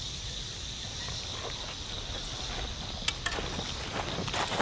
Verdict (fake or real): real